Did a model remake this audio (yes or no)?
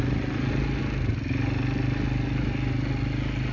no